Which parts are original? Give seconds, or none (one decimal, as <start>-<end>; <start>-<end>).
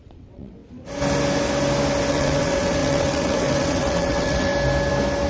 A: 0.6-2.1; 4.5-5.3